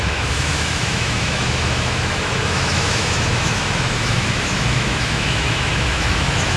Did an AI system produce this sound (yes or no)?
yes